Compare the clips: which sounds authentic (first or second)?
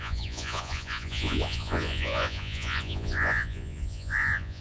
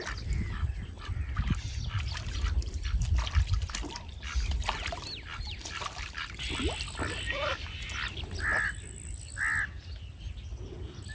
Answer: second